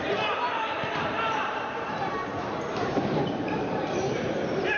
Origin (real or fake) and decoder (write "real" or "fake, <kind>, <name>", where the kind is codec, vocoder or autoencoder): fake, vocoder, BigVGAN v2